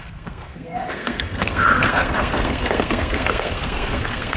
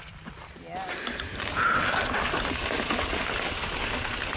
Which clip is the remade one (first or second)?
first